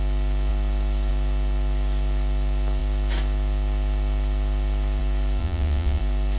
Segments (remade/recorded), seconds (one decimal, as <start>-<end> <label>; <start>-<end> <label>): 0.0-5.4 recorded; 5.4-6.0 remade; 6.0-6.4 recorded